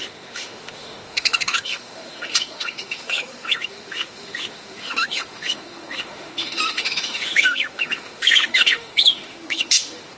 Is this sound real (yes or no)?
no